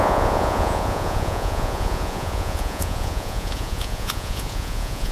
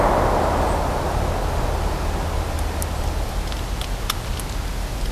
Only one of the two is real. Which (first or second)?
second